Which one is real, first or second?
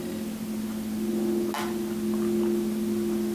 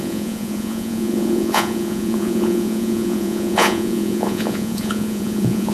first